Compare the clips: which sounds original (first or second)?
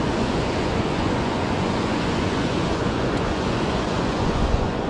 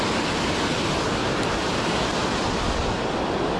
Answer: second